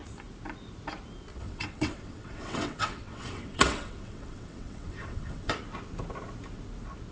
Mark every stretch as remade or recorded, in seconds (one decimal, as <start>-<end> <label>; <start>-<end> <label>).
0.0-1.3 recorded; 1.3-5.6 remade; 5.6-7.1 recorded